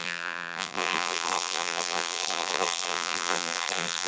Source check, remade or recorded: remade